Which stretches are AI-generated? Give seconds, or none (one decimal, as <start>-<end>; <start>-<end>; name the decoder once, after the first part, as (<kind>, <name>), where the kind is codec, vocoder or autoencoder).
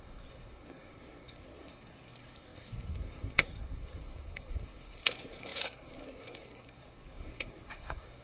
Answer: 0.0-8.2 (codec, SNAC)